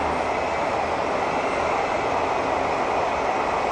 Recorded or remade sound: recorded